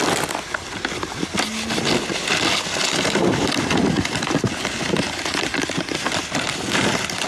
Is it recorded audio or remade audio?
recorded